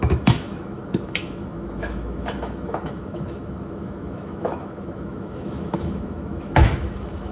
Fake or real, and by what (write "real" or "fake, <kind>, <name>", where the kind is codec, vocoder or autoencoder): fake, autoencoder, DAC-VAE